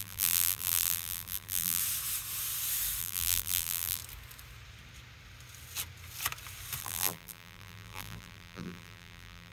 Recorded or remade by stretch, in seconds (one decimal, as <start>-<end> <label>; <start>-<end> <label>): 0.0-1.8 remade; 1.8-3.0 recorded; 3.0-4.0 remade; 4.0-6.8 recorded; 6.8-9.5 remade